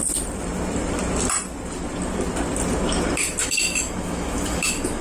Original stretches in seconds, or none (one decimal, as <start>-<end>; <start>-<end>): 0.0-3.4